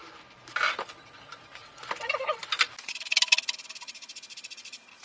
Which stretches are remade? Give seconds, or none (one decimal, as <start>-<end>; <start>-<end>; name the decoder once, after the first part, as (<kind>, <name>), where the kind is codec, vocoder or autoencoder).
none